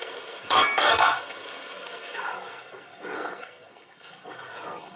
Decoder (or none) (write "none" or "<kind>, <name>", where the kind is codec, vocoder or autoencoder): codec, SNAC